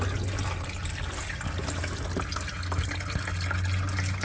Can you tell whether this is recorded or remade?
recorded